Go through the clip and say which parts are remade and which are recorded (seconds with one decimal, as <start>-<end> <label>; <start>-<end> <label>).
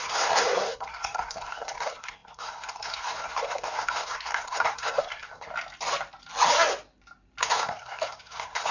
0.0-5.5 remade; 5.5-7.4 recorded; 7.4-8.7 remade